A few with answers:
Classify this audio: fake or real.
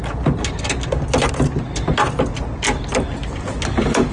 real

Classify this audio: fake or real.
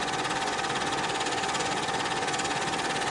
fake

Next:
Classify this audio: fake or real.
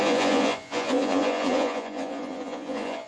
fake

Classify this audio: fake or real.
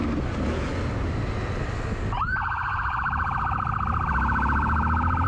real